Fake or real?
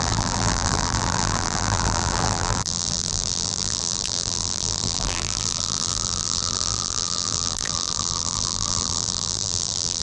fake